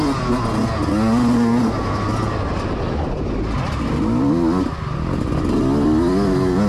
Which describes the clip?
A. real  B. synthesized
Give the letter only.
A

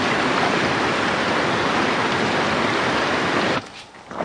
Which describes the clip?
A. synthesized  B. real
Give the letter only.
A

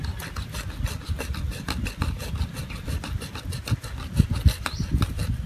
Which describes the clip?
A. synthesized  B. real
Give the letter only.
A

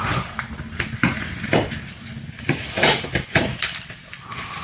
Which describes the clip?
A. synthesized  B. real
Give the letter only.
A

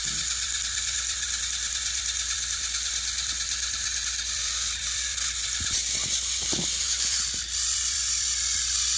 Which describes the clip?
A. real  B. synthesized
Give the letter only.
B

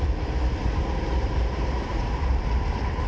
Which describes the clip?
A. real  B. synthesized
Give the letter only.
B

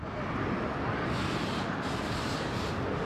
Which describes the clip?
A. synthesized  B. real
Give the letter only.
B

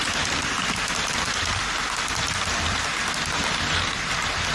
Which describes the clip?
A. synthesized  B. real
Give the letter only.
A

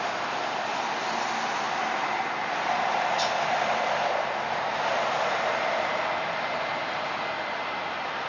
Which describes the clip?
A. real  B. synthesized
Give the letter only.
A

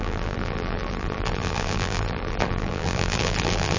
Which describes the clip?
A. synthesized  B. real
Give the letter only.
A